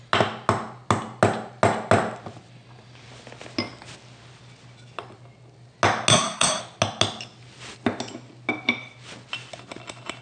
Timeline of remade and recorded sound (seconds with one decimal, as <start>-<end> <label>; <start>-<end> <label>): 0.0-6.1 recorded; 6.1-6.6 remade; 6.6-10.2 recorded